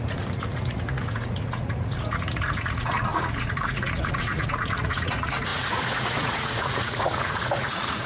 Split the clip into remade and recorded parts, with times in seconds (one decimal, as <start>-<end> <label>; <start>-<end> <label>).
0.0-8.1 remade